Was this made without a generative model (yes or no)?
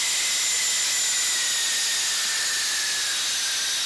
yes